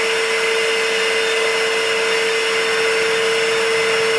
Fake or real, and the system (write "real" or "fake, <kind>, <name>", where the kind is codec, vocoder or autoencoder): real